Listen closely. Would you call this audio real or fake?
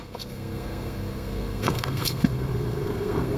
fake